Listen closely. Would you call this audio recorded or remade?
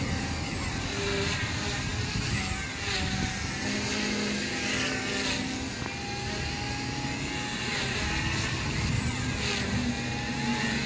recorded